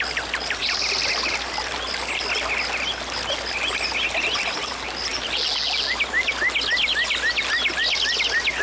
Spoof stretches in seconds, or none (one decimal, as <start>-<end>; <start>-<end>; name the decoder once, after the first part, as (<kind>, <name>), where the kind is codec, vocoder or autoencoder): none